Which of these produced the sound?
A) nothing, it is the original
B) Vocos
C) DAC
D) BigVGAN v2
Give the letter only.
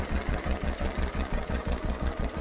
B